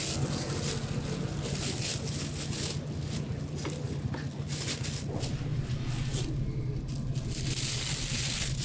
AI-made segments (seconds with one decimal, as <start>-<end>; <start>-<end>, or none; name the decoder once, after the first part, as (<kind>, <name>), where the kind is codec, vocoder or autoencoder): none